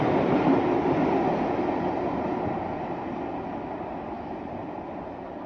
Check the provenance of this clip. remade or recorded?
recorded